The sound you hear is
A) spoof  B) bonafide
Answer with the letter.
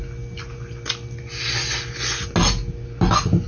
B